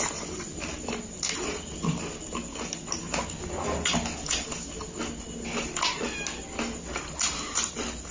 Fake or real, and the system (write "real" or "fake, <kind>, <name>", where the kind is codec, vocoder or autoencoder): real